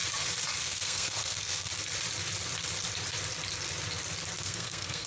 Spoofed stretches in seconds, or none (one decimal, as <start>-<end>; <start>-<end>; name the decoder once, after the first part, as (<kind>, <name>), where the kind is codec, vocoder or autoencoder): 0.6-1.7 (codec, SNAC); 4.4-5.1